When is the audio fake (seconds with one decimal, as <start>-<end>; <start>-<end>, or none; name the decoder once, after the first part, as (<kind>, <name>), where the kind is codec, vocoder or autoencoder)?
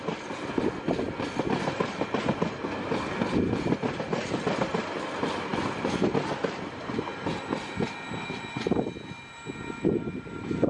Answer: none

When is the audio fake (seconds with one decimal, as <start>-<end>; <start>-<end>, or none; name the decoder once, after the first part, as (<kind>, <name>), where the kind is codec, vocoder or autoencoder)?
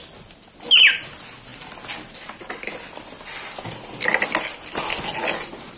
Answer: none